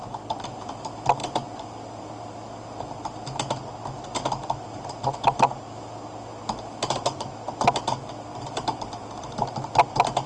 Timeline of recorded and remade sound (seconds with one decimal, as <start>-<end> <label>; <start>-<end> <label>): 0.0-8.3 recorded; 8.3-9.6 remade; 9.6-10.3 recorded